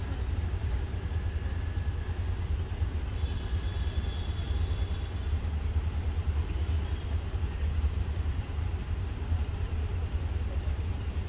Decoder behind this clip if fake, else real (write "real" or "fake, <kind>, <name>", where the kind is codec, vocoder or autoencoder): real